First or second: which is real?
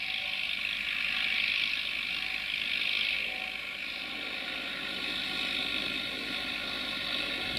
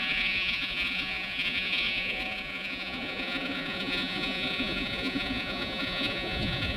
first